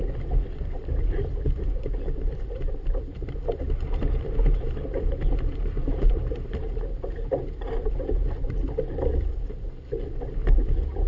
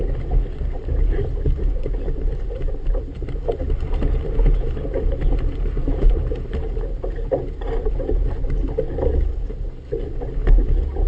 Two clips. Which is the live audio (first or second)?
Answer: second